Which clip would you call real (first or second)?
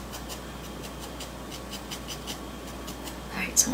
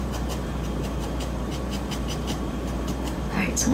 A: first